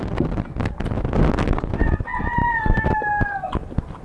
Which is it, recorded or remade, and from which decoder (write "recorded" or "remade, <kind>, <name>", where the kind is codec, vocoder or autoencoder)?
recorded